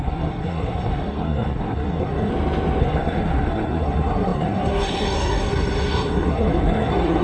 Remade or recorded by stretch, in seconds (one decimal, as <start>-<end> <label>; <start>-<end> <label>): 0.0-2.3 remade; 2.3-2.8 recorded; 2.8-7.2 remade